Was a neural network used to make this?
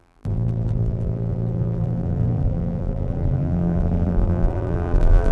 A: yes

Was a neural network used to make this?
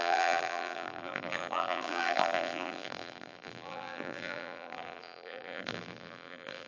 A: yes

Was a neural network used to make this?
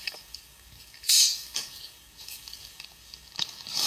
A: yes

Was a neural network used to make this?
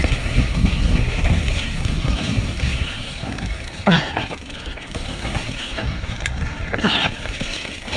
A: yes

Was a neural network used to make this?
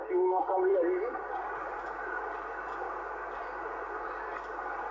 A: no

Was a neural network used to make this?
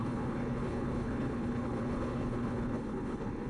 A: yes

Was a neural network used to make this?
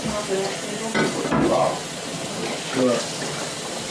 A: no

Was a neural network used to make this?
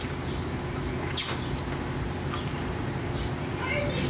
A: no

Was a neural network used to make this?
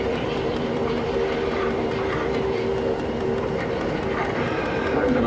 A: yes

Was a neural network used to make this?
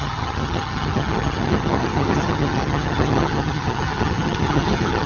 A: yes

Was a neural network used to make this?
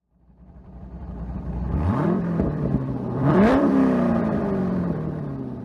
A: yes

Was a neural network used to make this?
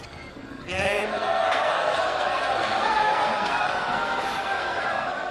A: yes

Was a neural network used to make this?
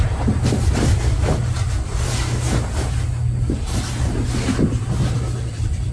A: no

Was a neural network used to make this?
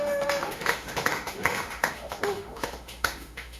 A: yes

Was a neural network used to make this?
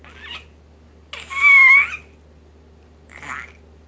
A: no